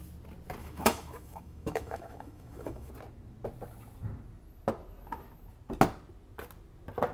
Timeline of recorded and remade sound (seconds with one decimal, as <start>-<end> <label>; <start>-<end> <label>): 0.0-0.6 recorded; 0.6-2.9 remade; 2.9-7.1 recorded